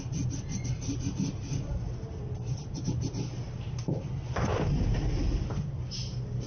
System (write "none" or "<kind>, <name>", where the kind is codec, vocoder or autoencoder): none